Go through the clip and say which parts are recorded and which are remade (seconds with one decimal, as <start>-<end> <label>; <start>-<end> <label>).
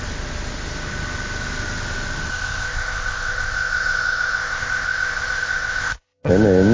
0.0-2.3 recorded; 2.3-6.3 remade; 6.3-6.7 recorded